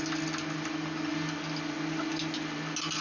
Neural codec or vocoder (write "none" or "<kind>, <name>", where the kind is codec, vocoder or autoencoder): none